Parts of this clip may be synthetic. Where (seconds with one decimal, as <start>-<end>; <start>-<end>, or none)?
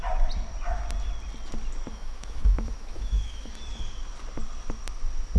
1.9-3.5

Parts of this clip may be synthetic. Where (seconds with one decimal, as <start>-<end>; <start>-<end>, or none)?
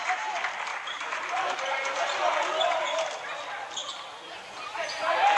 0.7-1.6; 3.8-4.5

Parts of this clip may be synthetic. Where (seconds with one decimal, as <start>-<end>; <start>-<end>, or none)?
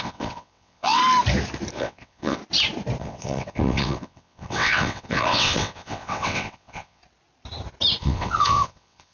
0.0-1.0; 1.7-2.4; 3.0-7.0; 8.0-9.1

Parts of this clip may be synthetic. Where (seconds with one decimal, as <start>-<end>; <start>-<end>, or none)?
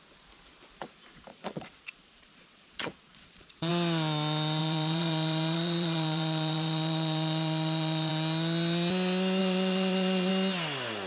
1.3-3.7; 4.6-8.1; 9.4-10.3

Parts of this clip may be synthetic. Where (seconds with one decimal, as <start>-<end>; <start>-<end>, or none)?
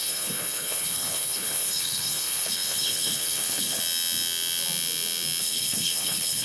0.0-3.8; 5.4-6.4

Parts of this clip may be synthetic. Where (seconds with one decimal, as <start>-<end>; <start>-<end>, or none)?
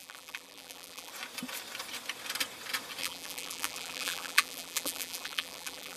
0.0-1.1; 3.0-6.0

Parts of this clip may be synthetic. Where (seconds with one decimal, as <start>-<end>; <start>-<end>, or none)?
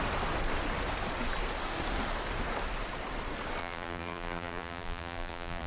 3.6-5.7